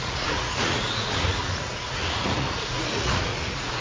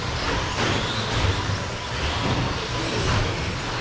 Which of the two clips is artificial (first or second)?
first